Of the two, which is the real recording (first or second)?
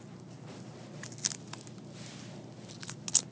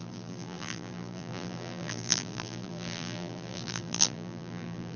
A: first